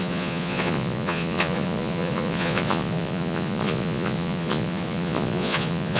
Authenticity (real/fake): fake